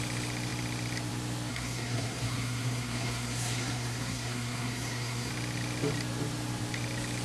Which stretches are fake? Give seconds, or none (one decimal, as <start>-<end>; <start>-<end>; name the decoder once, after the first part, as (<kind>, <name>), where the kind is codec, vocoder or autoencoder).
1.5-5.3 (codec, SNAC)